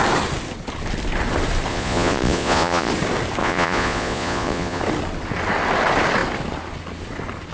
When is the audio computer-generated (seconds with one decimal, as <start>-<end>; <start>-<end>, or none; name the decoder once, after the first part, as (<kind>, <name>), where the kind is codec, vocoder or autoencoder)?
1.7-2.9 (vocoder, Vocos); 3.4-4.8